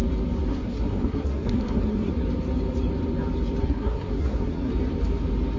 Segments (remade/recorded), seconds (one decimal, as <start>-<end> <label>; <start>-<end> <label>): 0.0-0.5 recorded; 0.5-2.1 remade; 2.1-3.6 recorded; 3.6-4.7 remade; 4.7-5.6 recorded